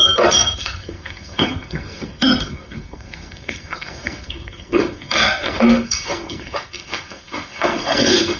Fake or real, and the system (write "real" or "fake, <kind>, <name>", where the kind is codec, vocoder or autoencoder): fake, codec, SNAC